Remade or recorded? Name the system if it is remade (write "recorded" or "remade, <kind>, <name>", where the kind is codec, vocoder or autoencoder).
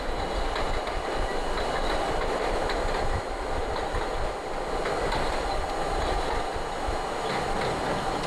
recorded